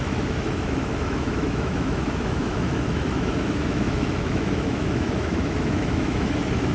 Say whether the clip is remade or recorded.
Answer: remade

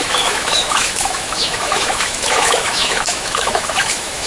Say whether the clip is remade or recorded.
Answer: remade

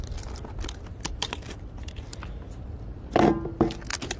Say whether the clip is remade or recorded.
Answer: recorded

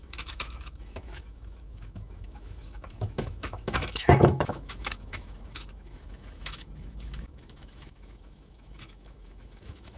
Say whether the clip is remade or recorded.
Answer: remade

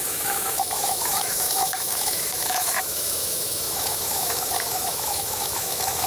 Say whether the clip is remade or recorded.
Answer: remade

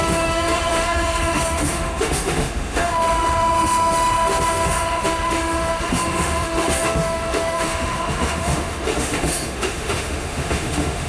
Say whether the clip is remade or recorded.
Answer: remade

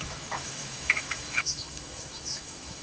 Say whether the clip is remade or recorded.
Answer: remade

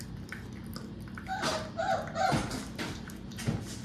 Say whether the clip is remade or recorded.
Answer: recorded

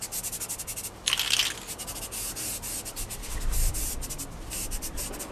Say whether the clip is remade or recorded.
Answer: recorded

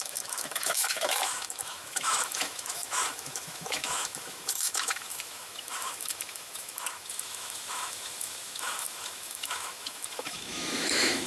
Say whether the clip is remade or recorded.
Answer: remade